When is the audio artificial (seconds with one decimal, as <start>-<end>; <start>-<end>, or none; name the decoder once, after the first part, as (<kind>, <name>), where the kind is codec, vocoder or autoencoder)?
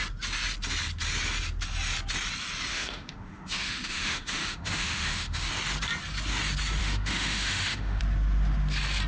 2.7-5.5 (autoencoder, DAC-VAE); 6.8-8.0